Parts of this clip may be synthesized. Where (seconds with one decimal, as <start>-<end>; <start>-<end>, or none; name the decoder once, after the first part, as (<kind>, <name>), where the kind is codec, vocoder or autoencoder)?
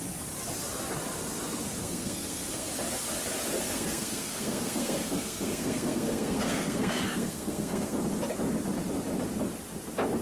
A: 1.8-2.7 (codec, SNAC); 3.7-8.0